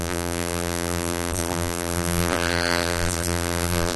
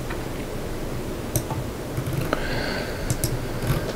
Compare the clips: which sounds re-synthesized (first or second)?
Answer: first